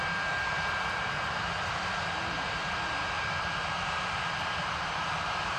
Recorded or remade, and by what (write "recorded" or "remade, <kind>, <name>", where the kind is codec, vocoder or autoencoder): remade, vocoder, BigVGAN v2